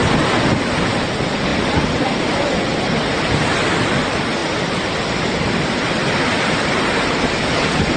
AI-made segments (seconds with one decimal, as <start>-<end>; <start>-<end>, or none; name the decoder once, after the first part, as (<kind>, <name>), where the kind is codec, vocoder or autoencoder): 1.5-3.4 (vocoder, BigVGAN v2); 4.4-6.8

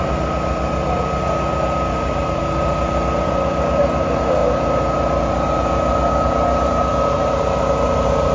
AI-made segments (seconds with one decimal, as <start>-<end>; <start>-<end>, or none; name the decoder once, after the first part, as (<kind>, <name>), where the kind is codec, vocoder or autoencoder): none